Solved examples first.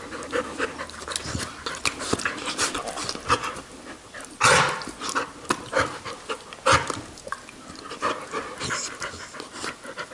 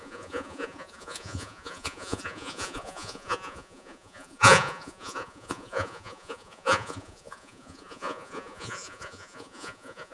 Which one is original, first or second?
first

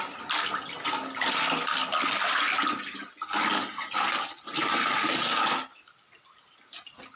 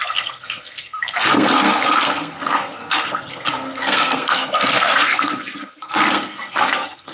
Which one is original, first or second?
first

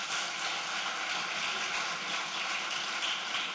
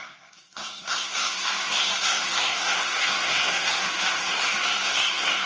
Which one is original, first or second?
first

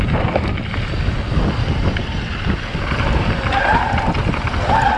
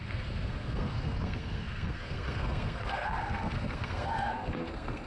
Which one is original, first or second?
first